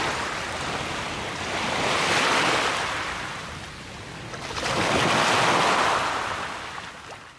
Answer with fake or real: real